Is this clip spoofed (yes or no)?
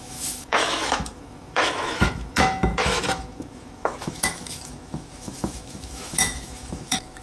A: yes